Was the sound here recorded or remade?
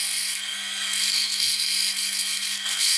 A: remade